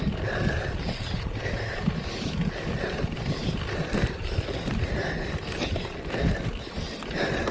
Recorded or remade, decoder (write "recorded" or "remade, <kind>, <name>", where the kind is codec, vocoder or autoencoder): recorded